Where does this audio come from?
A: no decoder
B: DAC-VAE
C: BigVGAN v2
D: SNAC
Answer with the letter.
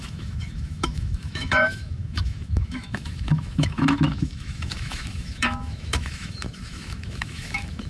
B